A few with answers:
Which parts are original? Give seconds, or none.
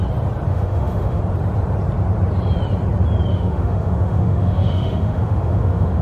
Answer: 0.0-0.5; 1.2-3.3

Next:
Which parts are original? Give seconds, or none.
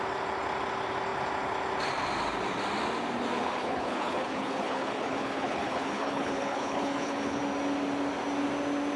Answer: 0.0-3.4; 7.4-9.0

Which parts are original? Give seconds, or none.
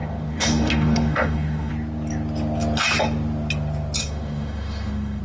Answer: 1.7-4.0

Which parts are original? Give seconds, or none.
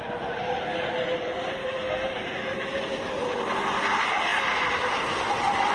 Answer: 0.0-1.6; 2.7-5.7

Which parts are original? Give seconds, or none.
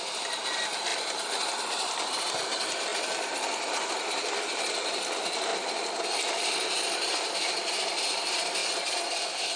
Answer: 5.5-6.0; 8.6-9.1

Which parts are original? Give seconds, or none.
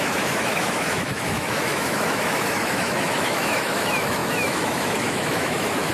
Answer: none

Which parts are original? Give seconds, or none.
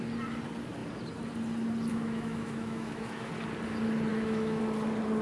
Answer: 0.0-1.9; 3.3-4.1; 4.6-5.2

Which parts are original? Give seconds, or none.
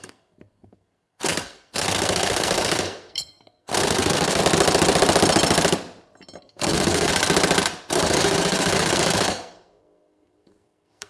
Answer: 4.4-6.4; 7.1-7.9